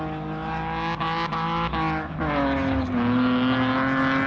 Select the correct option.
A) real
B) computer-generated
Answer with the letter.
A